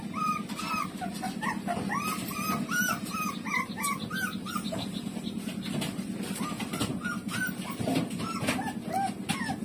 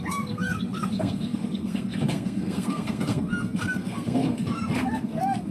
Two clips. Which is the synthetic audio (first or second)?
second